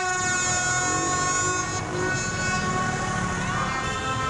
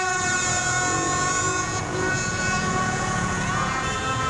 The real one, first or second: first